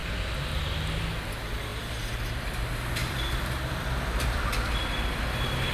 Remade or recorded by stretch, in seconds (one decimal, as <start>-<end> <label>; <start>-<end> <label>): 0.0-1.7 recorded; 1.7-4.9 remade; 4.9-5.7 recorded